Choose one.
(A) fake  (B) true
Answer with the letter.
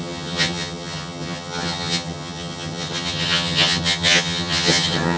A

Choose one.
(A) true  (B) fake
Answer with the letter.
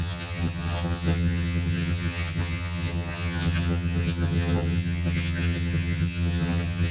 B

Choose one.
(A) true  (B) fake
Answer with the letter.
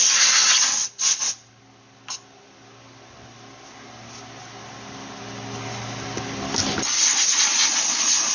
A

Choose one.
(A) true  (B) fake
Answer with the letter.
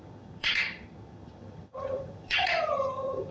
B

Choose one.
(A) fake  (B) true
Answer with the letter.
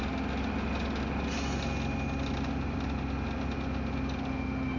B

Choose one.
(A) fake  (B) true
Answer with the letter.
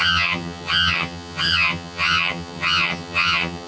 A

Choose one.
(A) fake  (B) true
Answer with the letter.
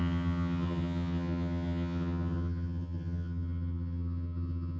A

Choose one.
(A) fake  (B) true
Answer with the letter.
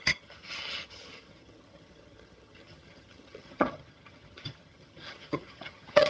A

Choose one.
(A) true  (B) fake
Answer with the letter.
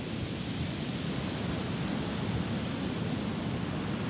A